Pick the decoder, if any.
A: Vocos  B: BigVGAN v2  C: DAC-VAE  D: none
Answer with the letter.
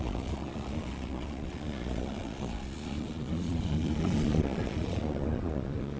A